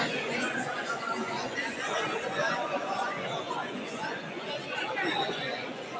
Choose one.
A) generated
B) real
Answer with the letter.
A